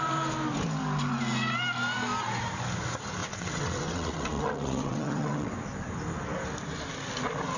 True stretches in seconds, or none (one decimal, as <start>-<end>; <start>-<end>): 0.0-3.2; 5.5-7.6